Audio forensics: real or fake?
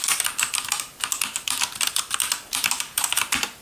fake